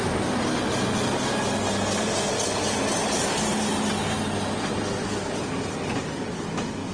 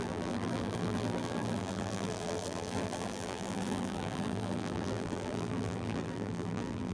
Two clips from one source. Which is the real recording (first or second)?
first